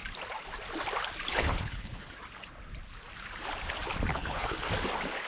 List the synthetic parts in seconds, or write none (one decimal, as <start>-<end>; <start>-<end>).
1.3-2.2; 4.1-4.7